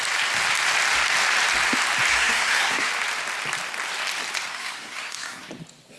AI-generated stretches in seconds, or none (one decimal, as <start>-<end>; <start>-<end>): 2.1-2.9; 4.5-5.5

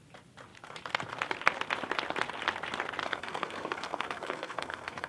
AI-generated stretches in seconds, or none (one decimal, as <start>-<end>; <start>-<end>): 3.0-5.1

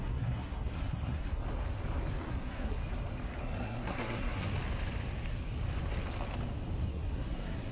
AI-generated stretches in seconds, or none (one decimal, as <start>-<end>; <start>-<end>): 0.0-1.4; 2.3-2.8; 3.4-4.5; 6.9-7.7

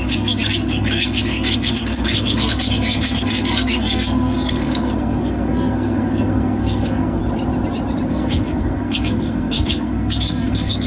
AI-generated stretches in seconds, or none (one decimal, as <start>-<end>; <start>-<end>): 0.0-7.2; 8.1-10.9